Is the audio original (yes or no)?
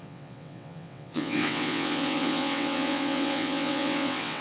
no